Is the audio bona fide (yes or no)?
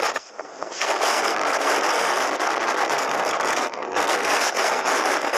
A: no